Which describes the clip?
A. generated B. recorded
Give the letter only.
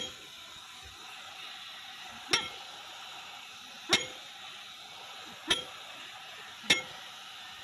B